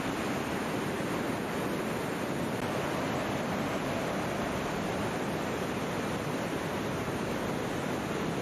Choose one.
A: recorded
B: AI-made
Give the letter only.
B